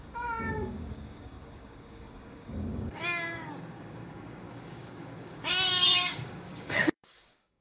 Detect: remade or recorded remade